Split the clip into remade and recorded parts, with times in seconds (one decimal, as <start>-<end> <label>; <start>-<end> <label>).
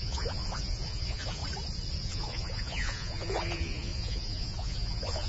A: 0.0-1.4 remade; 1.4-2.0 recorded; 2.0-5.3 remade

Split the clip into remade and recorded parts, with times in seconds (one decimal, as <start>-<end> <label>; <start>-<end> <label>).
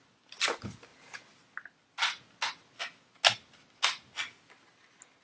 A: 0.0-5.2 recorded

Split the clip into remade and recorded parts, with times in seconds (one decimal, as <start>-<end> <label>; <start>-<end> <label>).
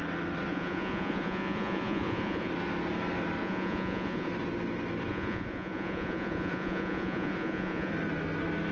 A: 0.0-0.5 recorded; 0.5-2.5 remade; 2.5-3.4 recorded; 3.4-4.3 remade; 4.3-5.1 recorded; 5.1-7.9 remade; 7.9-8.7 recorded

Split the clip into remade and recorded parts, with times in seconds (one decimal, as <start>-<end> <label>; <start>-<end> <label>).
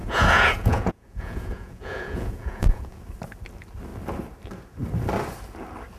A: 0.0-3.0 remade; 3.0-6.0 recorded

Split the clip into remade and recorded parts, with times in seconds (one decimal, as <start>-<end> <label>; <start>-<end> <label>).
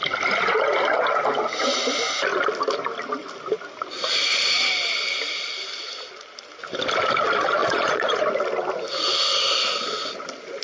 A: 0.0-7.6 recorded; 7.6-8.2 remade; 8.2-10.6 recorded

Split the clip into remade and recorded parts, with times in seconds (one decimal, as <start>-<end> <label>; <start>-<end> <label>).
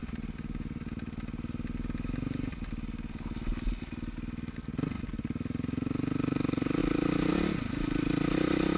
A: 0.0-8.8 recorded